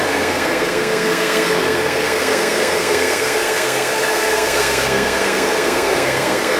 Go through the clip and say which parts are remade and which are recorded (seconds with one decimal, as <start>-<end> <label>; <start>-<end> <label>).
0.0-6.6 remade